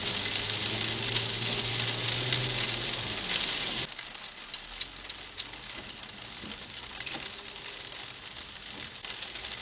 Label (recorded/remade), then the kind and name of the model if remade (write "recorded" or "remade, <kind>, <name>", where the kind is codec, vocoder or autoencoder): recorded